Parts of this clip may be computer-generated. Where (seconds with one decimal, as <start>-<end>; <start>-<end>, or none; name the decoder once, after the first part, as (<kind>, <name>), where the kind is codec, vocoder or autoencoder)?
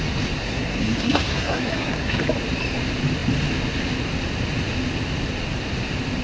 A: 0.4-2.2 (codec, SNAC)